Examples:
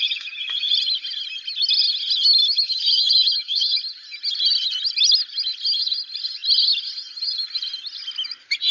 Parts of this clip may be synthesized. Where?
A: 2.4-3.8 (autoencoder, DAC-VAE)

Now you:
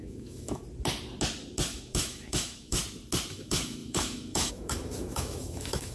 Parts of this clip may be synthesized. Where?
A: 0.0-0.6 (autoencoder, DAC-VAE); 1.7-2.8; 3.3-5.9

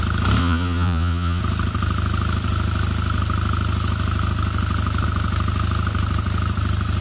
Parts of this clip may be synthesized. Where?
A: 0.4-1.4 (vocoder, Vocos)

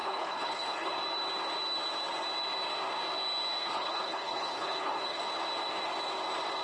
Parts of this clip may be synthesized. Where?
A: 0.0-0.9 (codec, HILCodec); 3.6-5.2